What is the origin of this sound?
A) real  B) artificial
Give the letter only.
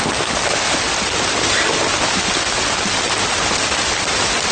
A